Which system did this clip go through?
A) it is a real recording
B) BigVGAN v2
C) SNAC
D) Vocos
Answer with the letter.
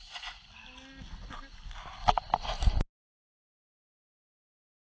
A